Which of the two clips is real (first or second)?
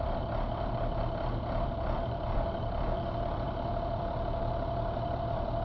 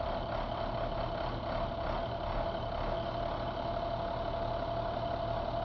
second